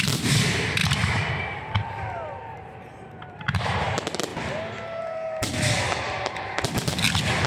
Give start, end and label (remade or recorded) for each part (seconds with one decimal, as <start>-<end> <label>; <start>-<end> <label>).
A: 0.0-4.3 remade; 4.3-7.5 recorded